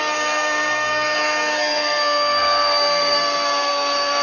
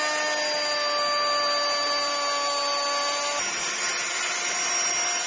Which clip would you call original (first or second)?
second